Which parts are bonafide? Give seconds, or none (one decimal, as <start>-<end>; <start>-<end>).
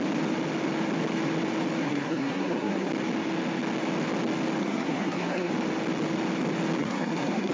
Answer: 0.0-1.8; 2.9-4.6; 5.5-6.8